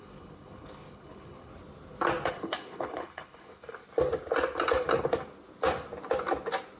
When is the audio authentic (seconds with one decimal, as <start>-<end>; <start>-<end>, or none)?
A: 1.5-2.3; 3.8-6.8